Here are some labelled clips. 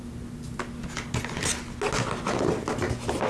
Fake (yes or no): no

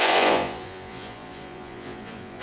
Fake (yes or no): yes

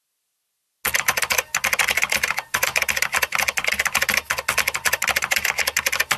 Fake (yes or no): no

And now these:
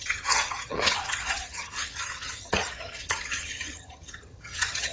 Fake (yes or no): yes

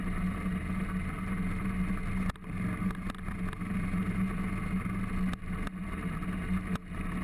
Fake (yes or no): no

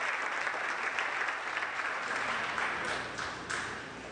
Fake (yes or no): no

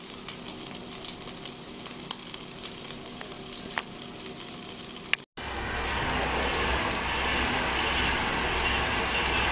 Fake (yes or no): no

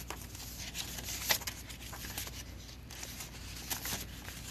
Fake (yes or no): no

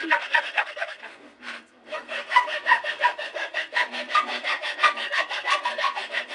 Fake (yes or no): yes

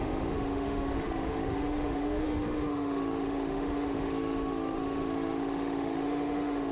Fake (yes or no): yes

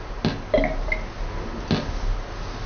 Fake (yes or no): no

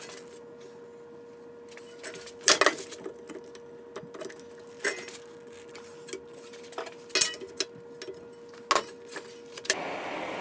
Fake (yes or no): no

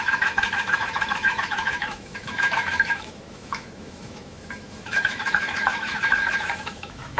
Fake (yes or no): yes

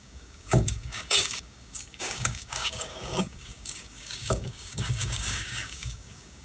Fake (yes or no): yes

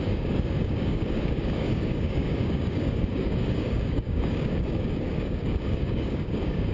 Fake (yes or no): yes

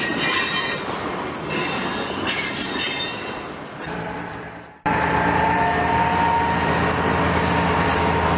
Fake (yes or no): no